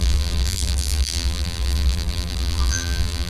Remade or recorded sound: remade